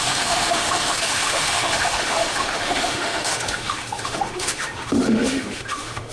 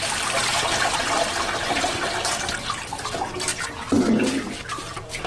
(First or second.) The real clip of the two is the second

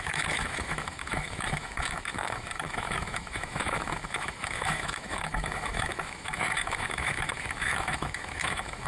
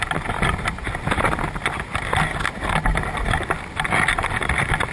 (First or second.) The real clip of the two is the second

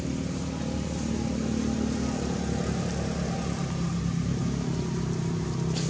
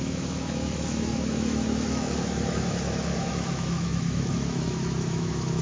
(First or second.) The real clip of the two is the first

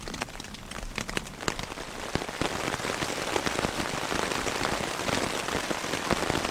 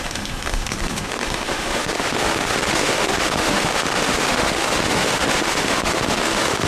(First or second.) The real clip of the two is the first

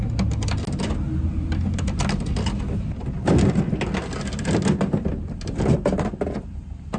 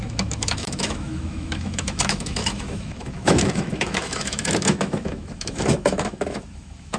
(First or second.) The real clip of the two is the first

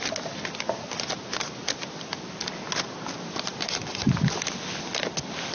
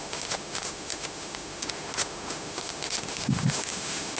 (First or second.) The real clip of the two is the first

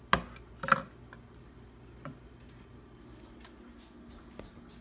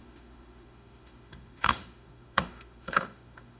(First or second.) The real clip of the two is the first